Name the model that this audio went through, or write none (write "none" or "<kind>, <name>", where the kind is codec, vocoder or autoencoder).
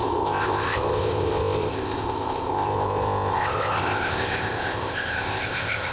codec, ZipCodec